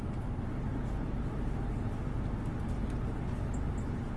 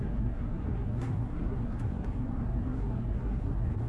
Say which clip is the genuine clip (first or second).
first